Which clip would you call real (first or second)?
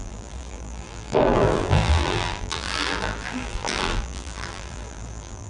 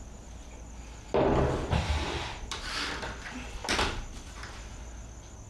second